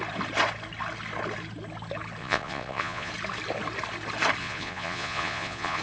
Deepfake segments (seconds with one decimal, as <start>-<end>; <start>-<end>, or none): 2.2-3.1; 4.4-5.8